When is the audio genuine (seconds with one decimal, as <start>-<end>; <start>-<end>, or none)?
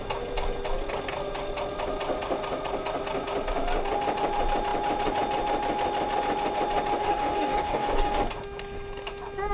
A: 0.0-7.0; 8.2-9.5